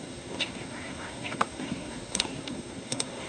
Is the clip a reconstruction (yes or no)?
yes